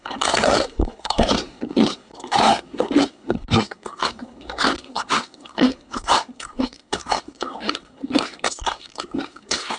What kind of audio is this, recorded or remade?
remade